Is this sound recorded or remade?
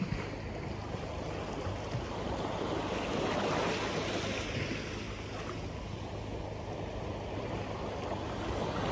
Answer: recorded